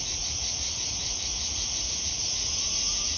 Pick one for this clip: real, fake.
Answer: fake